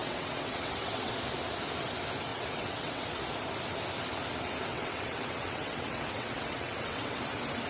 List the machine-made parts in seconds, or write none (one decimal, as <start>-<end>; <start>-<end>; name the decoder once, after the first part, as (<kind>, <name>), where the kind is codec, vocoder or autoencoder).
0.0-1.1 (vocoder, WaveNeXt); 2.3-3.2; 4.7-7.2